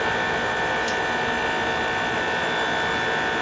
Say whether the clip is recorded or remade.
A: recorded